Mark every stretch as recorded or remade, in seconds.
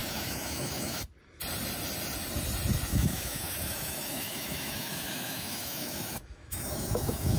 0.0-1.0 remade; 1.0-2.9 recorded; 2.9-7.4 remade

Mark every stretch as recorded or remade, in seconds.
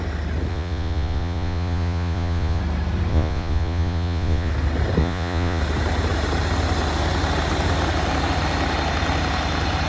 0.0-0.5 recorded; 0.5-2.6 remade; 2.6-3.1 recorded; 3.1-4.5 remade; 4.5-5.0 recorded; 5.0-5.6 remade; 5.6-9.9 recorded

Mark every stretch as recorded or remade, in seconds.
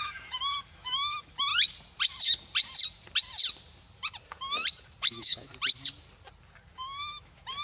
0.0-1.5 remade; 1.5-5.0 recorded; 5.0-5.5 remade; 5.5-6.7 recorded; 6.7-7.6 remade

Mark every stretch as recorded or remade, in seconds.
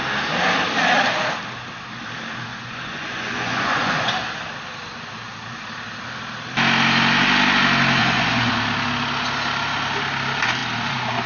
0.0-2.5 recorded; 2.5-4.1 remade; 4.1-8.0 recorded; 8.0-8.5 remade; 8.5-11.3 recorded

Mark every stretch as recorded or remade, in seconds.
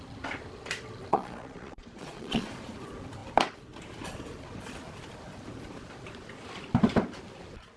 0.0-1.1 recorded; 1.1-2.5 remade; 2.5-7.8 recorded